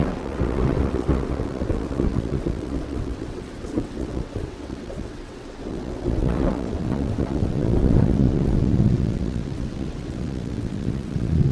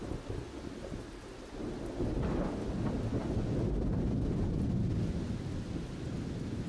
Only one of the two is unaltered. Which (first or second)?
second